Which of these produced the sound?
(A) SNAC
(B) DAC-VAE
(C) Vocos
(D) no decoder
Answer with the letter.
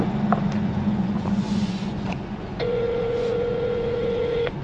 C